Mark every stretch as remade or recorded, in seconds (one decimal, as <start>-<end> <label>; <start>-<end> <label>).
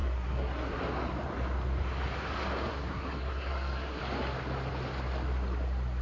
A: 0.0-0.8 remade; 0.8-2.7 recorded; 2.7-4.0 remade; 4.0-6.0 recorded